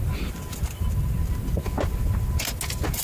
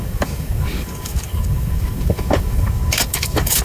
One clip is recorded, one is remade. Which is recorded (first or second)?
first